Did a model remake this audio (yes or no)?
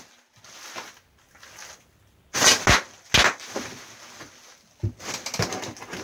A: no